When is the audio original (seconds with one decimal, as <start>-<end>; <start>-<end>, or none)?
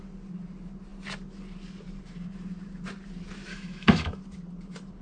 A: 0.0-3.5; 4.2-5.0